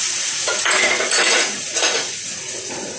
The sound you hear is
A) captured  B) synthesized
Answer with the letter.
B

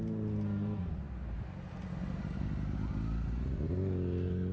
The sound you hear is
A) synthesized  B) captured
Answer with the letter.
B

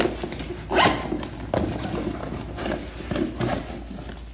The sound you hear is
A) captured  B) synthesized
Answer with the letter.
A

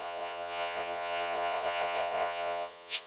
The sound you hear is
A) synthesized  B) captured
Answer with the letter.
A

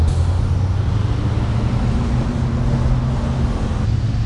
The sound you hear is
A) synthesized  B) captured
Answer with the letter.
B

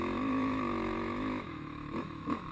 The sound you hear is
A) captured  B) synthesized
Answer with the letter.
B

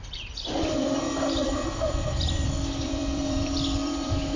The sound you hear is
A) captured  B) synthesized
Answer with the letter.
B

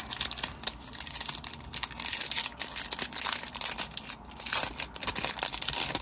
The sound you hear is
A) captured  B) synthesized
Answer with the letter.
A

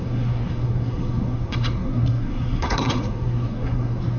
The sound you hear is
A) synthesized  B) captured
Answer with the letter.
A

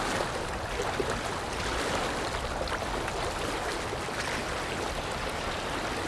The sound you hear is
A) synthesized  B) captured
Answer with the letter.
B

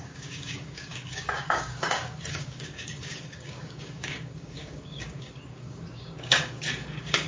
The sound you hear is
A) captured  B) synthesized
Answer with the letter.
B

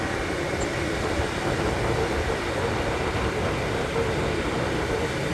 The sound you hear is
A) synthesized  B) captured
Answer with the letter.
B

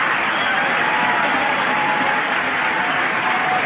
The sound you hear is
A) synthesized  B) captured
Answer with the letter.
B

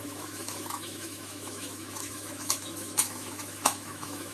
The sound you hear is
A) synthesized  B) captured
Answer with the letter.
A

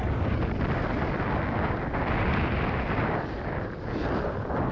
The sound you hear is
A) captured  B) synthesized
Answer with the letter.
A